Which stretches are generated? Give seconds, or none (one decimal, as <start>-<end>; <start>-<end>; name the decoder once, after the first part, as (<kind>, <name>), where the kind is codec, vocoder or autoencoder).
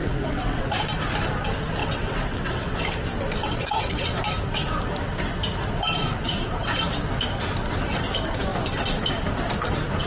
0.0-0.6 (vocoder, WaveNeXt); 1.8-2.8; 3.4-4.2